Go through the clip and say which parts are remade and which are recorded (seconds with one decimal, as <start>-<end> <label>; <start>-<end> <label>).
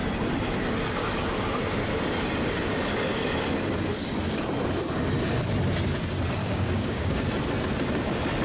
0.0-6.4 recorded; 6.4-7.2 remade; 7.2-8.4 recorded